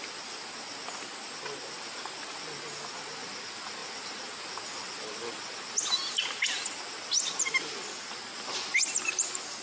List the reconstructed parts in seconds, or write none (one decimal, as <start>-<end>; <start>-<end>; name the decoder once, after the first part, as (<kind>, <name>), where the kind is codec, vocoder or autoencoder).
none